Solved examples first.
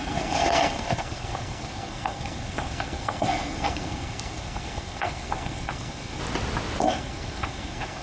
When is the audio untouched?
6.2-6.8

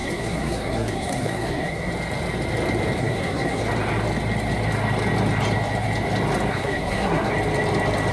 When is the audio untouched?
1.9-3.0; 3.6-6.5; 7.3-8.1

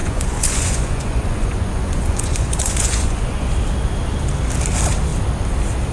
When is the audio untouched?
3.5-5.9